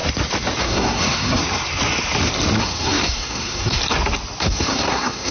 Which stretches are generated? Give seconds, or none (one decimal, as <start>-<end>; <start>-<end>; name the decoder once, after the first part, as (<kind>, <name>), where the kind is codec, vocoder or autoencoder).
0.6-1.4 (codec, SNAC); 2.6-3.8; 4.4-5.3